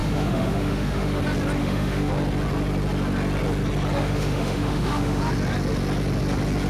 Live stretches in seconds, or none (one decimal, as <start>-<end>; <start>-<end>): 1.2-1.6; 2.1-4.0; 5.2-6.7